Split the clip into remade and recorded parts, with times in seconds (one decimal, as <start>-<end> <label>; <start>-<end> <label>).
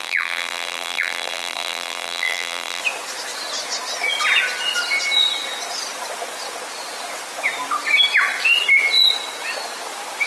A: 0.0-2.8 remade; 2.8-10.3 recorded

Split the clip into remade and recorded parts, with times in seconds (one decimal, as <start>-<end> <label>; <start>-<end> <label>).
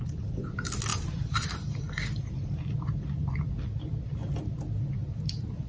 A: 0.0-0.9 recorded; 0.9-3.5 remade; 3.5-5.0 recorded; 5.0-5.7 remade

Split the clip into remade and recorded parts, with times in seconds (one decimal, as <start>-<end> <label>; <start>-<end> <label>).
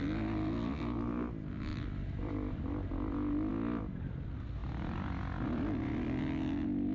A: 0.0-1.7 recorded; 1.7-2.5 remade; 2.5-6.9 recorded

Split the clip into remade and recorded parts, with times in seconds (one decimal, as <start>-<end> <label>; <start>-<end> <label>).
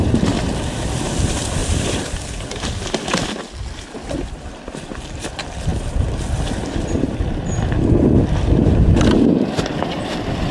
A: 0.0-1.6 remade; 1.6-4.4 recorded; 4.4-5.7 remade; 5.7-8.7 recorded; 8.7-10.5 remade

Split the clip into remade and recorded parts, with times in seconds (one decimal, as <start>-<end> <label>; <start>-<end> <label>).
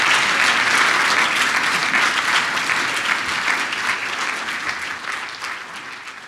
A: 0.0-6.3 recorded